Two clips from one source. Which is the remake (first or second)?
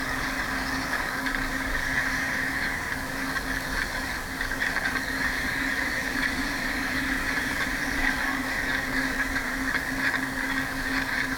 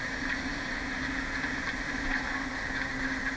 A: first